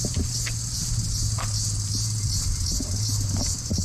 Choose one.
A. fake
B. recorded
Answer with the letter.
B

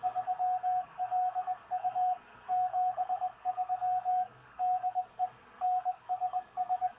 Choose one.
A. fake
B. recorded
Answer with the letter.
A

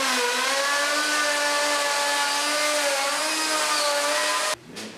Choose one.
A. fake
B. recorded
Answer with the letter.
B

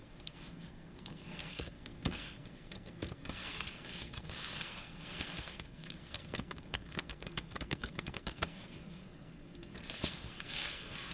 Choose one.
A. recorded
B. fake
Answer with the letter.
B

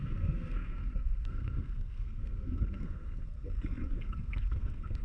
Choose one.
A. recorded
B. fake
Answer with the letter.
B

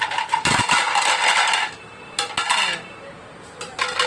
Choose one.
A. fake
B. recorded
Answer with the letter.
B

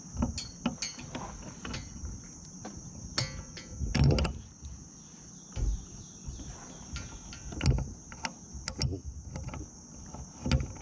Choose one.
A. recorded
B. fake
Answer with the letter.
A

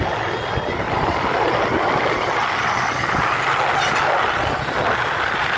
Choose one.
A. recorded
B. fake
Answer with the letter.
A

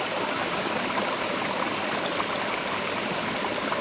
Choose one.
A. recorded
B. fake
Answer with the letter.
A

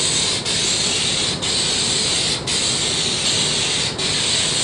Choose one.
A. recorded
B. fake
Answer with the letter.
A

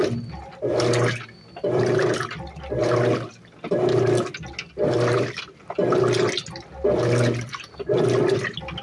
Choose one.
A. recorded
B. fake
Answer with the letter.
A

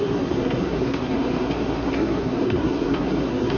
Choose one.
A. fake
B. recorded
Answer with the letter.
A